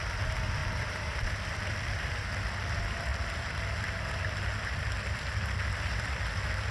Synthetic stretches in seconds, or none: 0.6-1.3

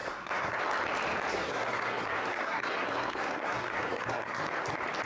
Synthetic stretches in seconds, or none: 0.0-0.6; 1.3-4.4

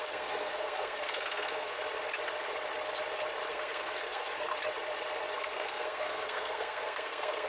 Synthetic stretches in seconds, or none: 0.0-1.8; 3.5-4.5; 5.4-7.5